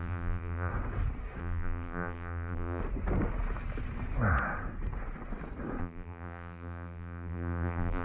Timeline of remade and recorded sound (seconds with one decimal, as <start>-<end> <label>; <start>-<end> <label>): 0.0-0.7 remade; 0.7-1.4 recorded; 1.4-2.8 remade; 2.8-5.8 recorded; 5.8-8.0 remade